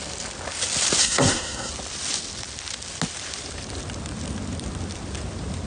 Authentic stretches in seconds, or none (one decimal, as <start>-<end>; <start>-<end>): 0.0-1.0; 1.7-5.7